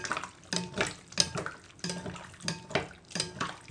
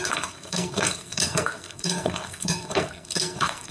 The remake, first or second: second